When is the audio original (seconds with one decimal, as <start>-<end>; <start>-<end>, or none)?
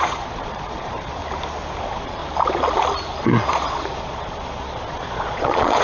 1.2-1.8; 2.2-3.2